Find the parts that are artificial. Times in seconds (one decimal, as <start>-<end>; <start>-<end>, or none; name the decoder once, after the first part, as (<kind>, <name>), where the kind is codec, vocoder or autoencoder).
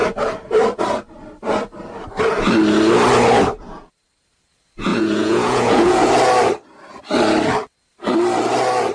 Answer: 4.9-6.1 (vocoder, Vocos)